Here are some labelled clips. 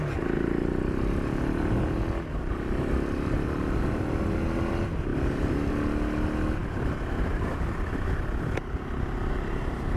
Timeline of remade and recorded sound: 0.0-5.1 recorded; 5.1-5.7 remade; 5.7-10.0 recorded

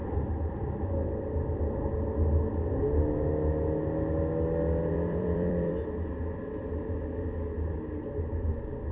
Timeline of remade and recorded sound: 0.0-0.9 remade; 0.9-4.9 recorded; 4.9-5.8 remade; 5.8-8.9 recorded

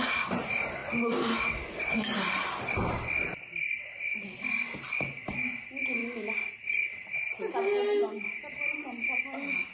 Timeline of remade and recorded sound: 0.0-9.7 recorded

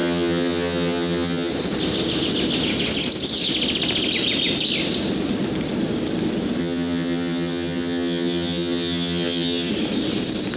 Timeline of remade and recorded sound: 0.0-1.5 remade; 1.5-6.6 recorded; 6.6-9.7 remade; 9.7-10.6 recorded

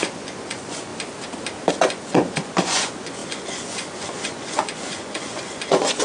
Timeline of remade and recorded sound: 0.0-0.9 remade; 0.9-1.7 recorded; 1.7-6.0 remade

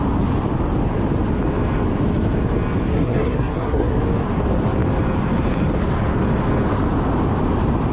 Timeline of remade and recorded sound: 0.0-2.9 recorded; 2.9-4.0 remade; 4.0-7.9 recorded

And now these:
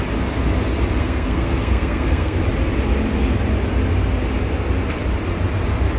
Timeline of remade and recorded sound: 0.0-1.0 recorded; 1.0-2.4 remade; 2.4-6.0 recorded